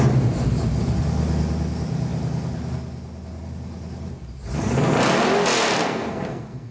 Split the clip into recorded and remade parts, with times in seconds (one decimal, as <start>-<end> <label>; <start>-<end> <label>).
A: 0.0-5.8 recorded; 5.8-6.7 remade